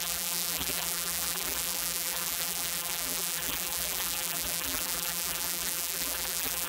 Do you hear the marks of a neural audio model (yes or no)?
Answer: yes